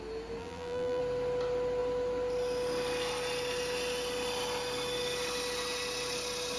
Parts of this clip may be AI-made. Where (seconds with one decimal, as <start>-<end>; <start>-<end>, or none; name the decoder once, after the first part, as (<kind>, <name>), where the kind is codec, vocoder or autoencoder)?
0.4-1.0 (vocoder, BigVGAN v2)